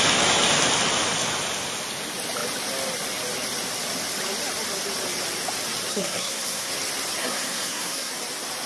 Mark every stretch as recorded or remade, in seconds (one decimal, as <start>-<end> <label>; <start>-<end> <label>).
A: 0.0-5.9 recorded; 5.9-6.7 remade; 6.7-7.2 recorded; 7.2-8.1 remade; 8.1-8.7 recorded